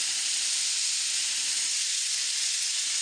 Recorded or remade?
recorded